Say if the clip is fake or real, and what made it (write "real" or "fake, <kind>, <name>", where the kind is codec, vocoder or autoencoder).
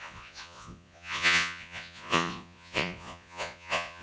fake, vocoder, Vocos